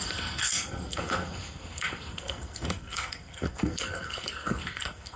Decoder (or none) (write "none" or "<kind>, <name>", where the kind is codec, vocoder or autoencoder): codec, SNAC